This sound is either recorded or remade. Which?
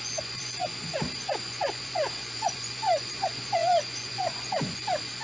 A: remade